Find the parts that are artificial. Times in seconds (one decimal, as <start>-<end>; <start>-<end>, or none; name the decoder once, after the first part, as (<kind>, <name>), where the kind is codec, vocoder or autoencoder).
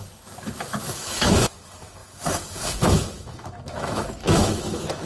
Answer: 0.0-5.1 (autoencoder, DAC-VAE)